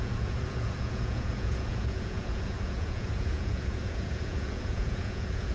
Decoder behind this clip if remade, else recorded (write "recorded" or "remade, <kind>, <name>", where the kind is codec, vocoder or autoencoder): remade, vocoder, Vocos